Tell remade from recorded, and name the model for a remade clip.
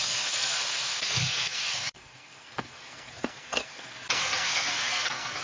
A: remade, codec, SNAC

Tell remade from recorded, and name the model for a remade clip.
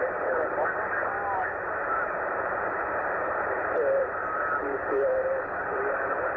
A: remade, vocoder, BigVGAN v2